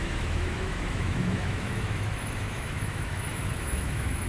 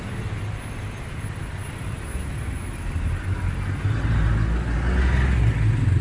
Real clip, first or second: second